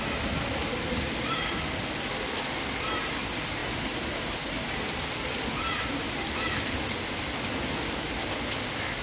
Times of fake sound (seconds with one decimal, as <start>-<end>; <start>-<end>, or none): 3.6-7.4